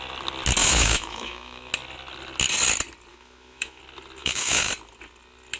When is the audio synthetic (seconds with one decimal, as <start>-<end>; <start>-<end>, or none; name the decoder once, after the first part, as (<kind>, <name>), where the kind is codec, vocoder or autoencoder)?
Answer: 0.6-1.7 (autoencoder, DAC-VAE); 3.1-3.8; 4.2-4.7